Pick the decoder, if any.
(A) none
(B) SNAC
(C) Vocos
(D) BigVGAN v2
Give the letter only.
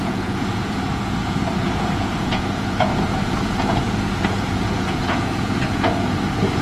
C